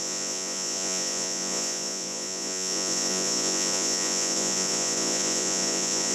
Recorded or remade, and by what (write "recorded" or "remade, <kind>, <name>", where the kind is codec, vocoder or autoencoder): remade, vocoder, Vocos